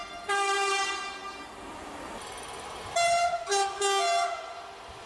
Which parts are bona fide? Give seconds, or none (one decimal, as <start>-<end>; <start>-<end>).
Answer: 0.0-5.1